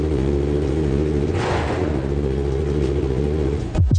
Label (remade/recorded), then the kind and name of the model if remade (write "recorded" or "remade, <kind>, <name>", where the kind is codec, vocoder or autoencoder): remade, vocoder, Vocos